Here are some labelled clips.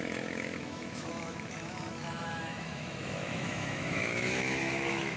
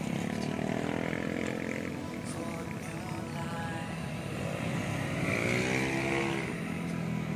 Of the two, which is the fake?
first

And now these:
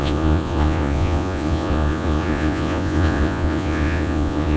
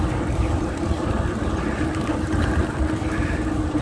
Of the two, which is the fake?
first